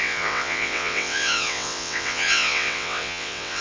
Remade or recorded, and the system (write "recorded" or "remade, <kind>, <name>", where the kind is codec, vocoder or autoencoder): remade, vocoder, WaveNeXt